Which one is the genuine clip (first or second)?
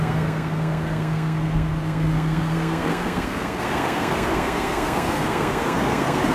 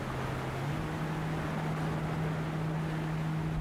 second